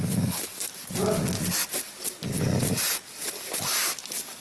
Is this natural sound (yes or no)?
yes